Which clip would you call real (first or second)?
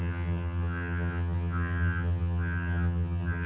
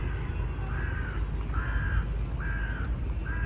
second